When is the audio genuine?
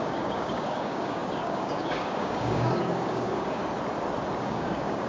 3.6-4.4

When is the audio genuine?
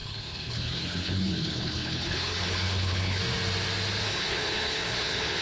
3.2-4.0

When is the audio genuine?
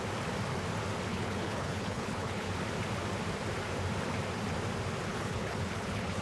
0.0-1.1; 2.5-5.1